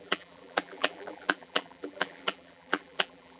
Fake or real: fake